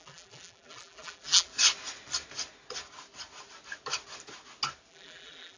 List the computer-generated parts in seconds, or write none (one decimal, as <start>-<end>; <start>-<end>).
0.0-1.5; 4.9-5.6